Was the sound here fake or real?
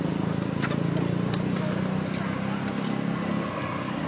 real